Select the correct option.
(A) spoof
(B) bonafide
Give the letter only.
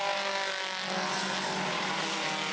B